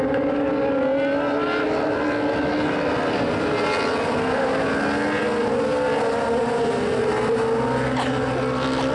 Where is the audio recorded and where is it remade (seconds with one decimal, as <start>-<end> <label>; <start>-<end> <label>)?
0.0-8.9 recorded